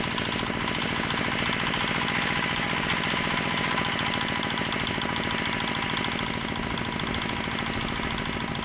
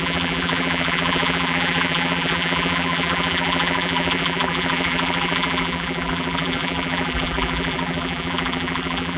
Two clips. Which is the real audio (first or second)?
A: first